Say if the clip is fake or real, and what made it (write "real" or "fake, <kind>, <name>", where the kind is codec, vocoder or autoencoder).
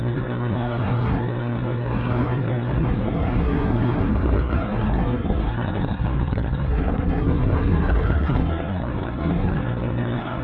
fake, codec, SNAC